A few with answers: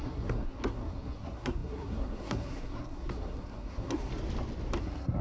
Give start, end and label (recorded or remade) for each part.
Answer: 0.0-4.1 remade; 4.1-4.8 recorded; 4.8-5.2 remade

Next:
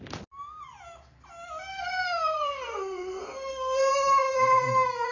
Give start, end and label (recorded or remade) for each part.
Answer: 0.0-1.7 recorded; 1.7-3.9 remade; 3.9-5.1 recorded

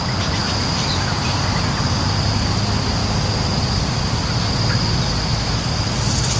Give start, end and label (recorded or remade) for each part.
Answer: 0.0-6.4 recorded

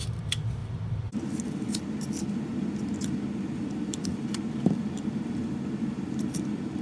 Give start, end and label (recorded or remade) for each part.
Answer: 0.0-0.6 recorded; 0.6-1.8 remade; 1.8-2.5 recorded; 2.5-6.8 remade

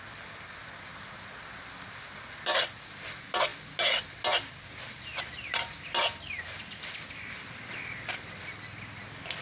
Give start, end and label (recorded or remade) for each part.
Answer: 0.0-9.4 recorded

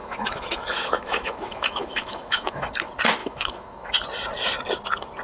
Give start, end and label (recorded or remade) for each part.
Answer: 0.0-2.7 remade; 2.7-3.2 recorded; 3.2-3.9 remade; 3.9-5.2 recorded

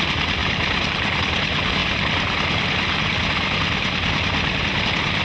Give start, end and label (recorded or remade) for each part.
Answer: 0.0-0.4 recorded; 0.4-1.4 remade; 1.4-5.2 recorded

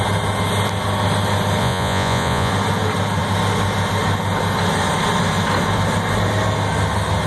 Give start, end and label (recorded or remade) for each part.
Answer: 0.0-1.6 recorded; 1.6-2.5 remade; 2.5-7.3 recorded